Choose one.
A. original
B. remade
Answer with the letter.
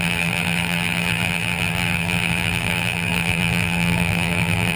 B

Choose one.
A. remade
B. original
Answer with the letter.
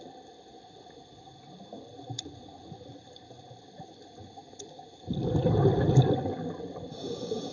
B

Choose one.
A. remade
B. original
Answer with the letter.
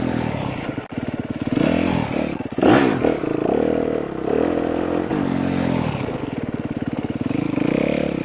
B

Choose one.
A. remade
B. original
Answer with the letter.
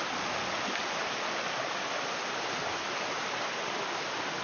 B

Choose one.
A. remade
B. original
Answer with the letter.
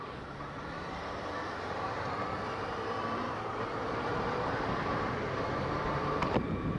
A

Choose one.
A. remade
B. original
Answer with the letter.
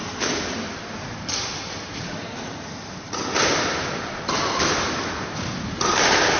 A